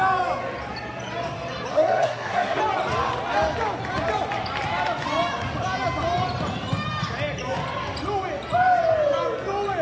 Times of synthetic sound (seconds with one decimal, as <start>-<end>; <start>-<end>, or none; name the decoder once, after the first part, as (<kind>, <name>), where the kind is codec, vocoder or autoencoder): 1.7-2.6 (codec, SNAC)